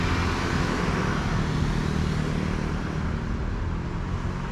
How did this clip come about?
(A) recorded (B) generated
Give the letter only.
A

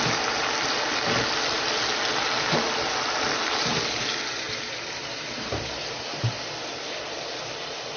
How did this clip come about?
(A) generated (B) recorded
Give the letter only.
B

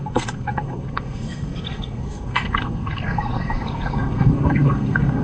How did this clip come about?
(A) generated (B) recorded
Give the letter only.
A